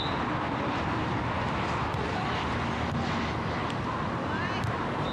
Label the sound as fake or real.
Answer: real